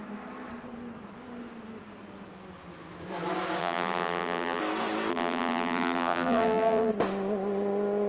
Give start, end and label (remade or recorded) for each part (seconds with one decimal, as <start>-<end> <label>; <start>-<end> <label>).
0.0-3.6 recorded; 3.6-4.6 remade; 4.6-5.1 recorded; 5.1-6.9 remade; 6.9-8.1 recorded